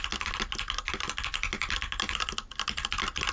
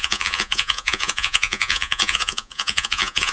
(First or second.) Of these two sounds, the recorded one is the first